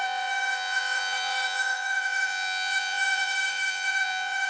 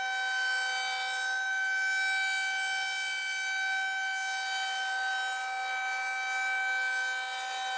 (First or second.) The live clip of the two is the second